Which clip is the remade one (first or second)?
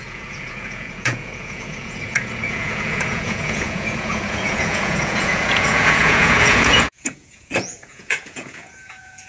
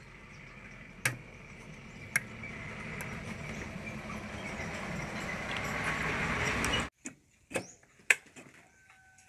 first